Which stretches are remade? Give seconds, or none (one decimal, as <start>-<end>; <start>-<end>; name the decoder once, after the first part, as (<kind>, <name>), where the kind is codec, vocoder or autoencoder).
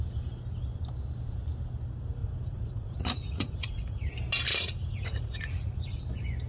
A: 2.2-4.1 (vocoder, Vocos); 4.5-6.0